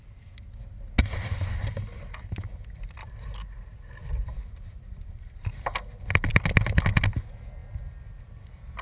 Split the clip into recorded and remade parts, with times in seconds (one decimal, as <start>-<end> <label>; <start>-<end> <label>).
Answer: 0.0-4.0 recorded; 4.0-4.8 remade; 4.8-6.3 recorded; 6.3-6.8 remade; 6.8-7.6 recorded; 7.6-8.8 remade